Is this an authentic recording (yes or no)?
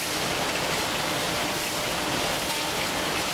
yes